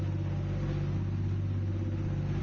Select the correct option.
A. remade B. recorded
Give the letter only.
B